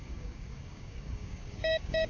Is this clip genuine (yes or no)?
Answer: no